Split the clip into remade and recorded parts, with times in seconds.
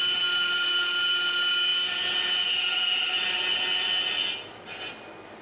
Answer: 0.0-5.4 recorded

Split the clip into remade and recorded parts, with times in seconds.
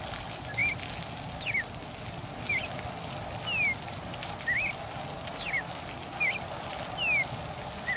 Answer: 0.0-8.0 recorded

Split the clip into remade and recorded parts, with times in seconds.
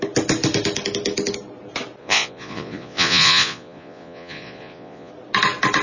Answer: 0.0-2.0 recorded; 2.0-5.1 remade; 5.1-5.8 recorded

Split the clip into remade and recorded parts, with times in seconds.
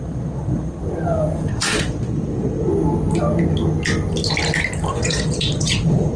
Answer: 0.0-0.8 remade; 0.8-1.5 recorded; 1.5-2.7 remade; 2.7-4.9 recorded; 4.9-6.2 remade